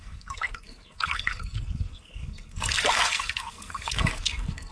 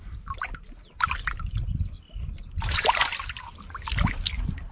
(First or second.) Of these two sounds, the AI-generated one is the first